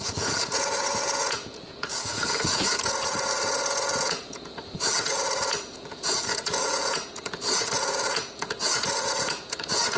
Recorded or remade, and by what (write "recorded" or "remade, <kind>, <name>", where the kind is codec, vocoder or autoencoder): remade, vocoder, Vocos